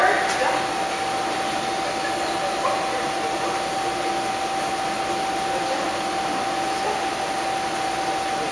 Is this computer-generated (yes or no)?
no